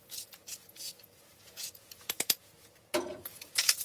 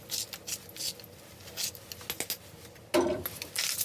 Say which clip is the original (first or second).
second